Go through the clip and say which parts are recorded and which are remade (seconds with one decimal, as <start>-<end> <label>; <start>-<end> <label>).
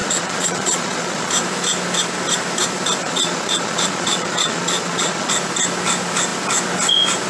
0.0-1.3 remade; 1.3-3.0 recorded; 3.0-5.3 remade; 5.3-7.3 recorded